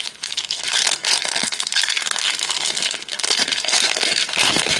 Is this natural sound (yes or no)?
no